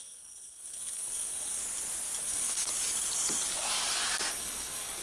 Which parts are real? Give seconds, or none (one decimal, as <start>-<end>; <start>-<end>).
1.6-2.2; 2.7-4.3